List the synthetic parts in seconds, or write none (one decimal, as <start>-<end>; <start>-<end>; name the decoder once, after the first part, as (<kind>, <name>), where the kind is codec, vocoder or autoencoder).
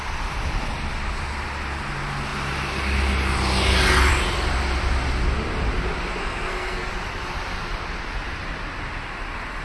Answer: 6.2-6.9 (codec, SNAC)